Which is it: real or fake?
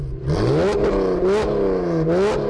real